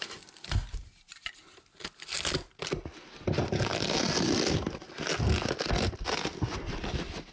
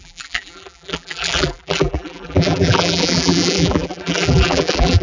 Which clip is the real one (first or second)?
first